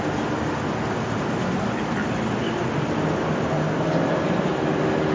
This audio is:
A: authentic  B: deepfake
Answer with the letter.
A